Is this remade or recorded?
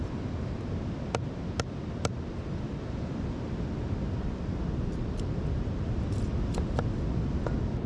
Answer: recorded